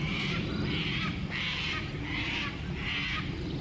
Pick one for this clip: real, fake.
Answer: real